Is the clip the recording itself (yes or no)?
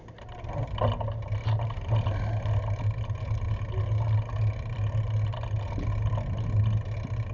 yes